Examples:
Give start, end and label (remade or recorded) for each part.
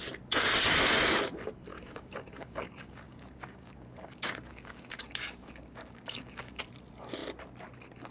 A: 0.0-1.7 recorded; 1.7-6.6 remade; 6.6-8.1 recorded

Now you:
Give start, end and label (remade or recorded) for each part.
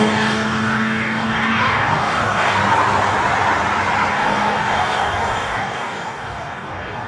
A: 0.0-2.6 remade; 2.6-4.1 recorded; 4.1-7.1 remade